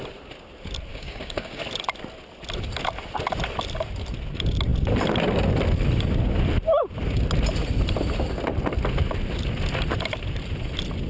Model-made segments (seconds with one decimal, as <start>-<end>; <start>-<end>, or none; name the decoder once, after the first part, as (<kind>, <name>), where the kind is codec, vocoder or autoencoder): 0.9-1.6 (codec, DAC)